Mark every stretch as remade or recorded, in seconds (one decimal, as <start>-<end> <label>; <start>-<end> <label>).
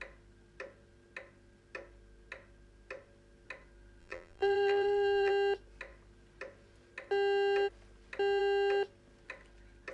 0.0-4.0 recorded; 4.0-5.3 remade; 5.3-9.9 recorded